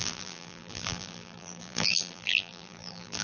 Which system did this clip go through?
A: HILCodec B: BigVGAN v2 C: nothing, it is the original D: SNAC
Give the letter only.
B